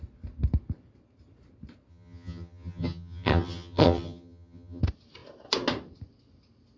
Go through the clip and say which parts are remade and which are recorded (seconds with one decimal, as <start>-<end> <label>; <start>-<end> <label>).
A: 0.0-1.9 recorded; 1.9-4.8 remade; 4.8-6.8 recorded